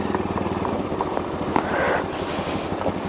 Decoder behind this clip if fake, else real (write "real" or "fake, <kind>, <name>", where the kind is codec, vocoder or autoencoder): real